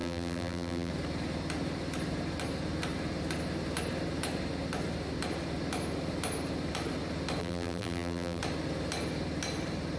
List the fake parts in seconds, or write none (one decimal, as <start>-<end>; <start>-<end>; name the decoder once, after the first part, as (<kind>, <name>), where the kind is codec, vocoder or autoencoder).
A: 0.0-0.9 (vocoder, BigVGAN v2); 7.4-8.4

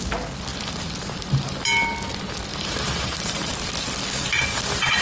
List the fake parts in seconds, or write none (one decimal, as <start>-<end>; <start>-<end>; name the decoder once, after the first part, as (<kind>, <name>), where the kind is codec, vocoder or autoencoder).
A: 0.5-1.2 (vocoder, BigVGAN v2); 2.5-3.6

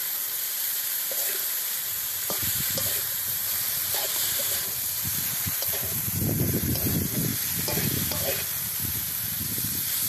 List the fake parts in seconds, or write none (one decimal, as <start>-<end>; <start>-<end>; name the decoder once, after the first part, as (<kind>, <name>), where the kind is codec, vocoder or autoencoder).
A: 0.0-7.3 (vocoder, BigVGAN v2); 8.1-10.1